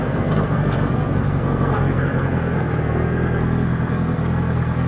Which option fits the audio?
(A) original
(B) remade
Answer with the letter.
B